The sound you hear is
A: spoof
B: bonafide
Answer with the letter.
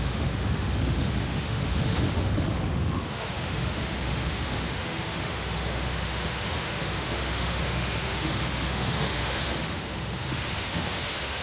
A